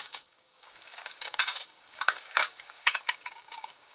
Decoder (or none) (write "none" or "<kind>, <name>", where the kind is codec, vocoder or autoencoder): codec, DAC